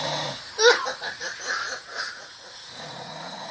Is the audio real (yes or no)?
no